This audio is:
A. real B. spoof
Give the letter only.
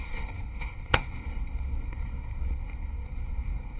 B